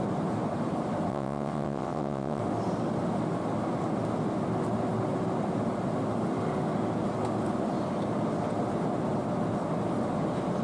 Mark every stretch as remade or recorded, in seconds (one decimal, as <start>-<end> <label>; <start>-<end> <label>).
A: 0.0-1.1 recorded; 1.1-2.4 remade; 2.4-10.6 recorded